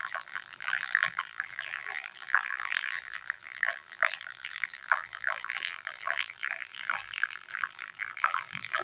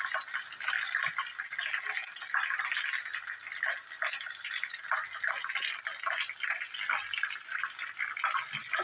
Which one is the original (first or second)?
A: second